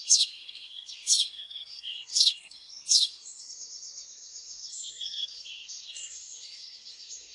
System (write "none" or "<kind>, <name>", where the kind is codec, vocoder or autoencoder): codec, SNAC